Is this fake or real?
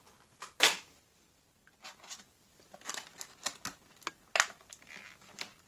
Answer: real